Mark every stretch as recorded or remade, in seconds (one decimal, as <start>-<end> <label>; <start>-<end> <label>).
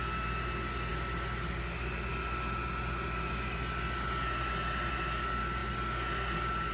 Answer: 0.0-6.7 recorded